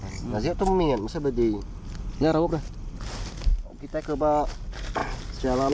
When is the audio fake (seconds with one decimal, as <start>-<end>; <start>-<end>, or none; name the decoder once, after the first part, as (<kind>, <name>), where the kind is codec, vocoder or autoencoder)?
3.5-4.0 (vocoder, BigVGAN v2)